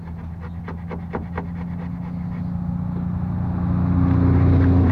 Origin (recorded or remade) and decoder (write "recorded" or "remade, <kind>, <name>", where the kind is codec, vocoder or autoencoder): recorded